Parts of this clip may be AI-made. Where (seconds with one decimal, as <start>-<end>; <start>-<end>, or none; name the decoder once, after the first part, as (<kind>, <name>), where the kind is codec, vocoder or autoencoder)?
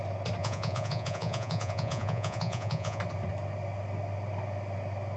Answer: 0.4-3.0 (vocoder, Vocos)